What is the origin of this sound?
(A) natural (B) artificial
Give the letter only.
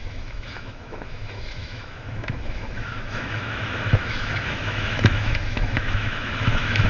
B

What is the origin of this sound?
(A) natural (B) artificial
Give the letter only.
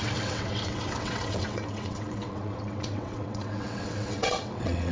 B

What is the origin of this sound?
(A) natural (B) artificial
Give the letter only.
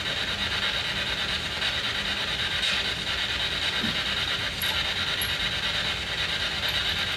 A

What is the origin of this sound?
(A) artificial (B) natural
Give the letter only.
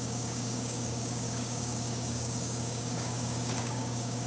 A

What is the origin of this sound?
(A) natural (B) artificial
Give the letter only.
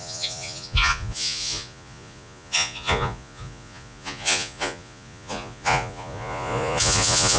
B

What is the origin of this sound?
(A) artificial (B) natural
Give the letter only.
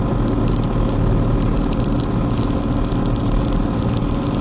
B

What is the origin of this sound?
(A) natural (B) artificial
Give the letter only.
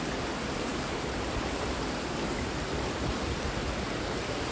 A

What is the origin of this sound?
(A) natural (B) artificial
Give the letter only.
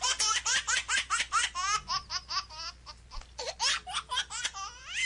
A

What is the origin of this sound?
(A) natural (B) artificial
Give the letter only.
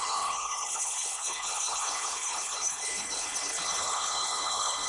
B